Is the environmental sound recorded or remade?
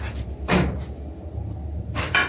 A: recorded